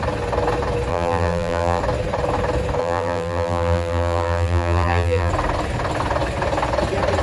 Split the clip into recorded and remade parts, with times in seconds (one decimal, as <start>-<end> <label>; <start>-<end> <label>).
0.0-0.9 recorded; 0.9-1.8 remade; 1.8-2.8 recorded; 2.8-5.3 remade; 5.3-7.2 recorded